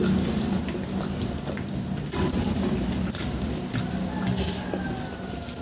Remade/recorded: recorded